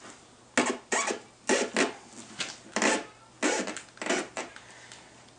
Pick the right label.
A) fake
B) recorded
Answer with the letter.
B